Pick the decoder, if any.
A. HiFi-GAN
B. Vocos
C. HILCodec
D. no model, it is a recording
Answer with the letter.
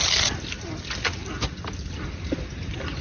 D